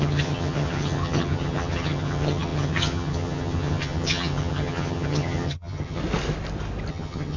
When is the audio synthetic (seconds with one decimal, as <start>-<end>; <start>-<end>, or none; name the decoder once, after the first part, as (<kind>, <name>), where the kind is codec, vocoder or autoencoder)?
0.0-6.0 (vocoder, HiFi-GAN); 6.9-7.4